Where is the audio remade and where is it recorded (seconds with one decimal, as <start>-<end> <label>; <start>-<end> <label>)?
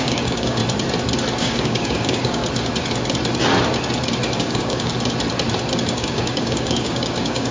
0.0-0.6 remade; 0.6-1.4 recorded; 1.4-2.4 remade; 2.4-4.4 recorded; 4.4-4.9 remade; 4.9-5.9 recorded; 5.9-7.5 remade